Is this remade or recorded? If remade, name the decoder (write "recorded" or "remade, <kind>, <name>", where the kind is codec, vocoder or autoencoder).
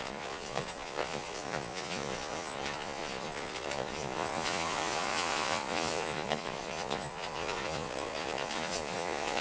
remade, vocoder, Vocos